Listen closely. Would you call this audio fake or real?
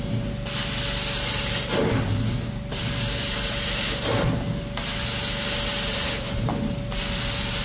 real